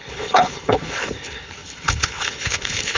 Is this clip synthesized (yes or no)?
yes